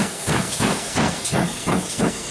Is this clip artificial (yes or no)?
yes